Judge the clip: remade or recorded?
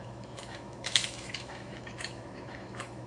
remade